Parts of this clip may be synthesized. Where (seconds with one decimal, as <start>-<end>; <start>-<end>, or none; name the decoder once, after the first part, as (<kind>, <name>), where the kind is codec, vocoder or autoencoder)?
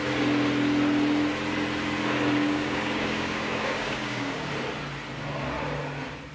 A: 2.4-4.5 (codec, DAC)